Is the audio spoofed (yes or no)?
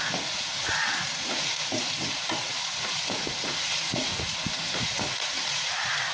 yes